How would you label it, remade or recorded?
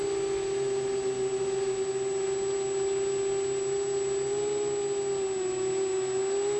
recorded